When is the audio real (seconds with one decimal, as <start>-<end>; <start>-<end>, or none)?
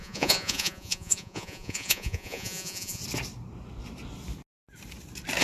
3.0-5.4